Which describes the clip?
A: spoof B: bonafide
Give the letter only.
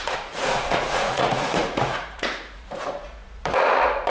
A